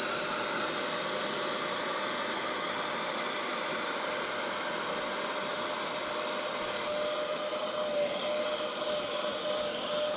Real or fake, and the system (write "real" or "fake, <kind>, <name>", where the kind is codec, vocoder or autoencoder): real